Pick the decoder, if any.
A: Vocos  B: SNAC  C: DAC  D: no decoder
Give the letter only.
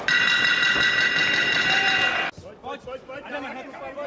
D